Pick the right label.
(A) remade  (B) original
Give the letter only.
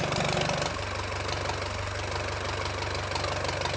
B